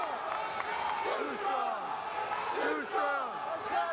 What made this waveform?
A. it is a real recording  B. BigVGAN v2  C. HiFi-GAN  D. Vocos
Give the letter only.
A